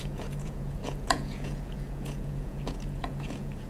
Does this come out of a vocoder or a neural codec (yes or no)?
yes